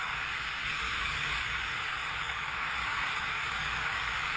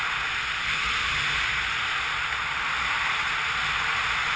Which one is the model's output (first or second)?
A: first